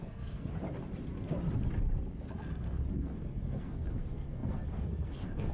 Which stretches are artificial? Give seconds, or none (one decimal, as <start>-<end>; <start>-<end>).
0.0-0.5; 2.9-5.5